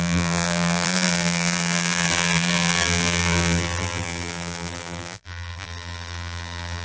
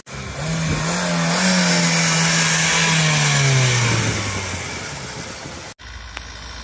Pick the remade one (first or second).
first